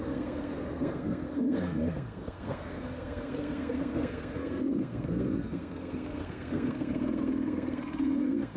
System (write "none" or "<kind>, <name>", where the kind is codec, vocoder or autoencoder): codec, SNAC